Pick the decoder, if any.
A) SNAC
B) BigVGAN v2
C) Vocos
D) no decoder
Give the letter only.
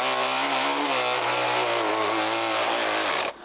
D